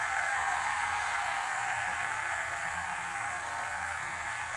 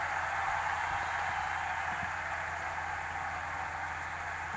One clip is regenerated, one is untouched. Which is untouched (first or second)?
second